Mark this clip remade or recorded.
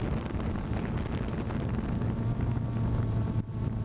recorded